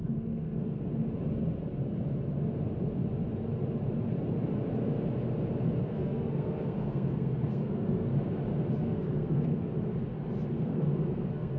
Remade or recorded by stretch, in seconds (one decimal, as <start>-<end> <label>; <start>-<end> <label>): 0.0-0.8 remade; 0.8-5.8 recorded; 5.8-8.1 remade; 8.1-8.7 recorded; 8.7-9.7 remade; 9.7-10.5 recorded; 10.5-11.6 remade